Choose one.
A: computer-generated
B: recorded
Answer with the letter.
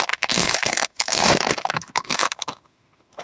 A